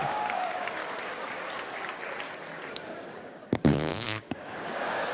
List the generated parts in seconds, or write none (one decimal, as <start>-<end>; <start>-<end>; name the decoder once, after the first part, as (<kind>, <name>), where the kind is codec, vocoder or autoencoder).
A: 0.0-0.8 (codec, DAC); 2.7-5.1